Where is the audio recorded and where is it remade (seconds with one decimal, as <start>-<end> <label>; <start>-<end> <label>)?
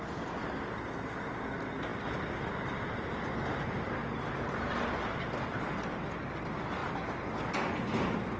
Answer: 0.0-8.4 recorded